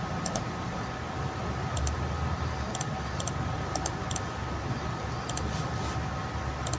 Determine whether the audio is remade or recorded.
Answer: recorded